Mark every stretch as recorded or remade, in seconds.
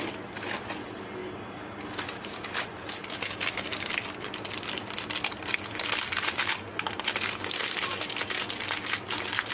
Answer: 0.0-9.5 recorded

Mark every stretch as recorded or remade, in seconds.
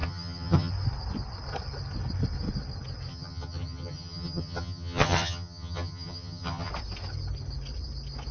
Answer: 0.0-0.7 remade; 0.7-3.1 recorded; 3.1-6.7 remade; 6.7-8.3 recorded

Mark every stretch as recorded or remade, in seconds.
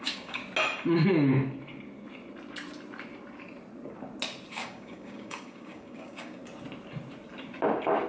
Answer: 0.0-0.4 remade; 0.4-4.5 recorded; 4.5-6.4 remade; 6.4-8.1 recorded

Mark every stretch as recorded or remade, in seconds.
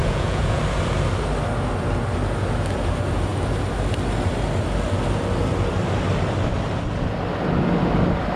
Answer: 0.0-0.6 remade; 0.6-8.4 recorded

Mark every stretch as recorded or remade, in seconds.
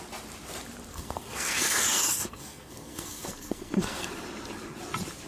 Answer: 0.0-0.9 recorded; 0.9-4.1 remade; 4.1-5.3 recorded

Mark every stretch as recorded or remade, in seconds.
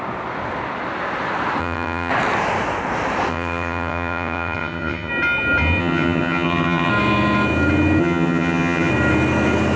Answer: 0.0-1.6 recorded; 1.6-2.1 remade; 2.1-3.3 recorded; 3.3-5.1 remade; 5.1-5.8 recorded; 5.8-6.9 remade; 6.9-8.0 recorded; 8.0-8.9 remade; 8.9-9.8 recorded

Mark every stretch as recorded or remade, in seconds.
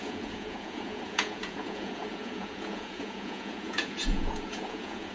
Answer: 0.0-5.1 remade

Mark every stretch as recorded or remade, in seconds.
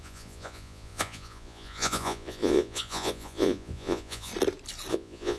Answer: 0.0-4.3 remade; 4.3-4.9 recorded; 4.9-5.4 remade